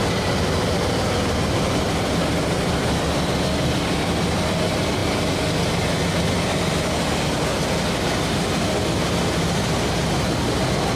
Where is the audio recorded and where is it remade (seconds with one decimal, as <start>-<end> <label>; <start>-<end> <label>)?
0.0-11.0 recorded